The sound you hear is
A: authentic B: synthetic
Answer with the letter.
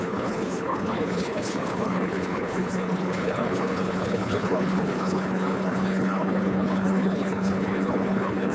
B